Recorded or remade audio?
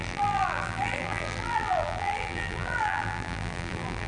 remade